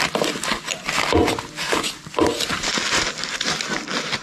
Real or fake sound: real